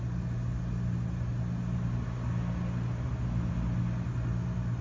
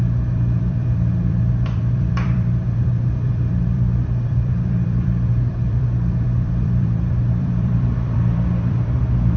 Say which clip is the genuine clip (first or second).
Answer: first